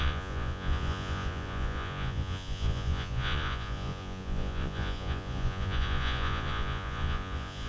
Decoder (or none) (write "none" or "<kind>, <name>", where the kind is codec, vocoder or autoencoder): vocoder, Vocos